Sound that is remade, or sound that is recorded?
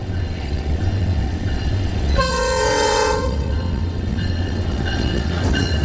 remade